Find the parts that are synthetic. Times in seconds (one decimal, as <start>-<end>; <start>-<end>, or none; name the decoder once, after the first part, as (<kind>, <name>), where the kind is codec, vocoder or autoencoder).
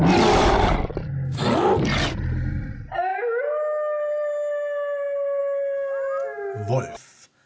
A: none